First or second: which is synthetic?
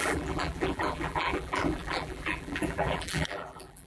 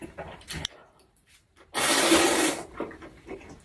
first